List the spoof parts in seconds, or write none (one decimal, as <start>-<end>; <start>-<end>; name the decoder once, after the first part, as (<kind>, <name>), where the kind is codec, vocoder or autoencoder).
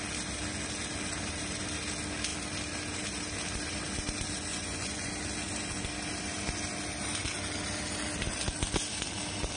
4.5-5.1 (vocoder, Vocos)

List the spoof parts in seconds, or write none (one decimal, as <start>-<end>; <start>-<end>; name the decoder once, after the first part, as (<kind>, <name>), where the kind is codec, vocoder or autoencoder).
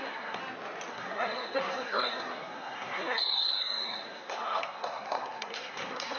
0.0-0.4 (codec, SNAC); 0.9-6.2